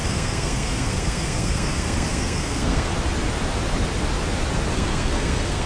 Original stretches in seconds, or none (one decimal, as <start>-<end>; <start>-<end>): 2.9-4.7